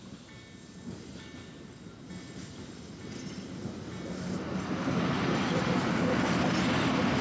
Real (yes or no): yes